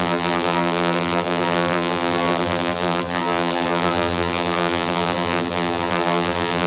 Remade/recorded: remade